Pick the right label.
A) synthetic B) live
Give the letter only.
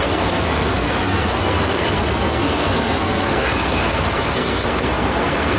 A